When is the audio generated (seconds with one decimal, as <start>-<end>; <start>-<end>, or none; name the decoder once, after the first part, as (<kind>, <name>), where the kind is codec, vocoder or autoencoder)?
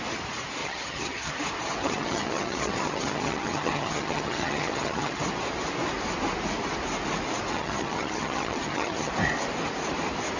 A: 0.6-1.3 (vocoder, HiFi-GAN); 1.8-5.2; 7.5-9.1